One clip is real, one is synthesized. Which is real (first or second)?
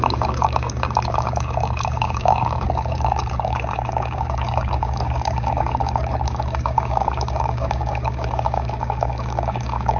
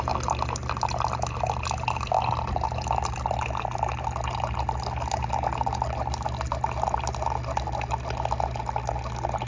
second